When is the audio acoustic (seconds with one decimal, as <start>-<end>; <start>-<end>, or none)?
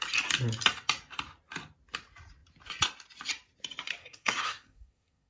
0.0-4.0